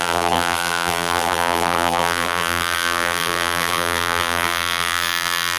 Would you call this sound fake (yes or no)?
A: yes